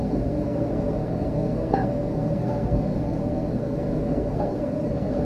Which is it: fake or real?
fake